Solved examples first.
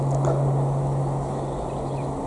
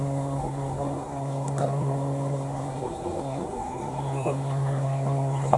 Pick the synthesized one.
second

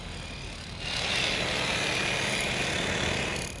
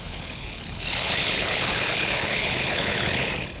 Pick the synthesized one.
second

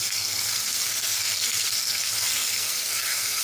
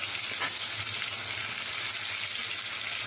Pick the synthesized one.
first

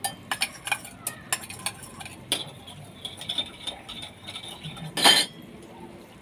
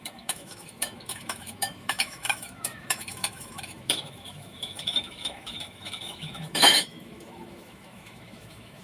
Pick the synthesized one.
second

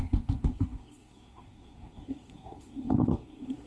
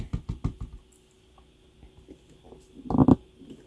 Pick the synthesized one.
first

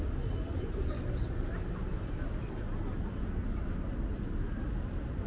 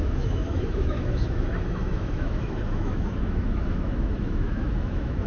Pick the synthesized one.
second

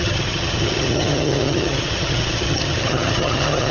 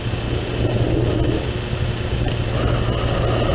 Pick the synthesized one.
first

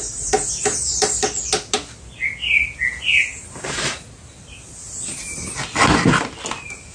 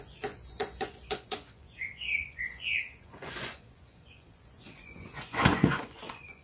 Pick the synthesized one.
second